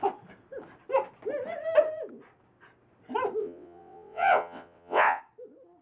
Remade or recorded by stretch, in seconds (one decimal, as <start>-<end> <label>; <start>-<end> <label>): 0.0-3.4 recorded; 3.4-5.2 remade; 5.2-5.8 recorded